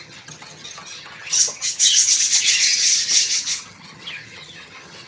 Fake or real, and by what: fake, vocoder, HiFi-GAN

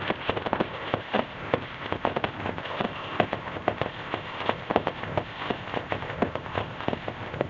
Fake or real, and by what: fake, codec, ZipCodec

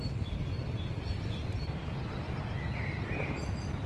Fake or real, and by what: real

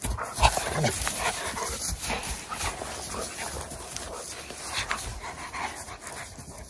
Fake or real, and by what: real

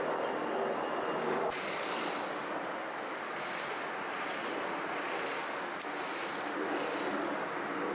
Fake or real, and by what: real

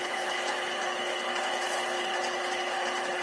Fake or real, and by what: fake, codec, HILCodec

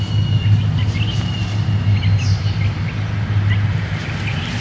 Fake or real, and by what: real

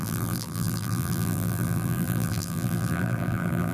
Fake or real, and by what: fake, vocoder, BigVGAN v2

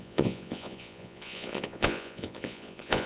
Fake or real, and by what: fake, vocoder, Vocos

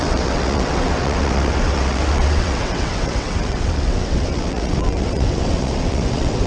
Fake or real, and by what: fake, vocoder, WaveNeXt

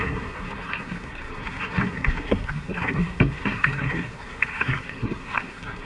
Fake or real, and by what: fake, codec, SNAC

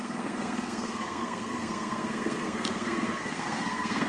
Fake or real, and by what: fake, codec, SNAC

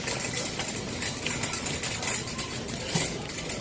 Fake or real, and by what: real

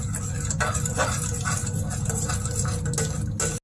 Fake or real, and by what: real